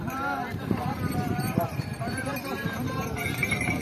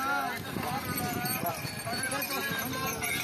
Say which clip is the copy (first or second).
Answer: first